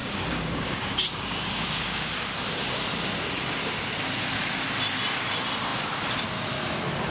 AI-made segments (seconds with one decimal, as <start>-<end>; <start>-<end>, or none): 0.0-2.1